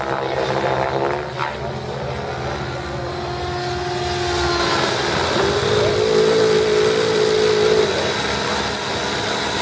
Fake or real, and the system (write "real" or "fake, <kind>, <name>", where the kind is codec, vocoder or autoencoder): real